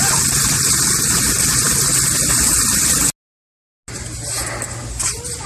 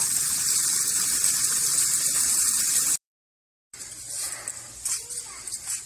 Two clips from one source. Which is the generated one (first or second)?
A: second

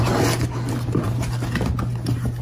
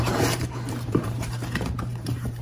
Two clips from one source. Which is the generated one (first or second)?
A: second